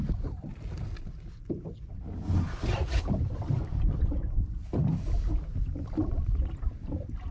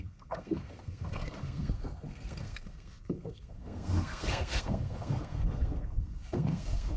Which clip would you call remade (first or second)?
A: second